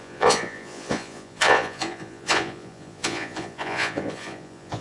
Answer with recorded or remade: remade